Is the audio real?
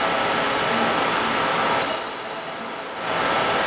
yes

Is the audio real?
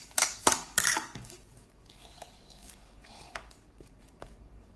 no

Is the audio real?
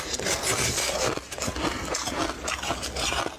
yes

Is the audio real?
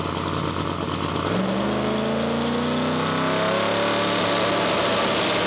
yes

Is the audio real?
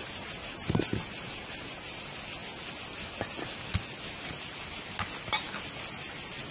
yes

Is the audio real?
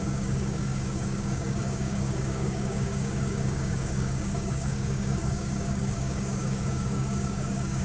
no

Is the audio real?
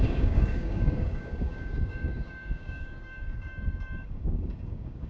no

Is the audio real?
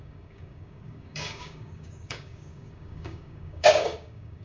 no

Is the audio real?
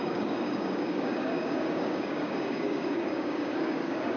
no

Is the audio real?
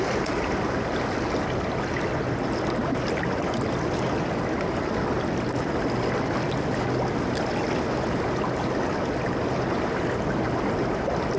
yes